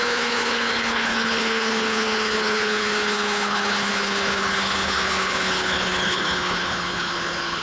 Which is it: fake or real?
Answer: fake